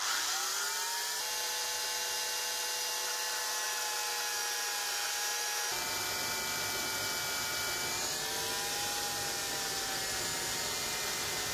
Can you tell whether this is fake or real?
real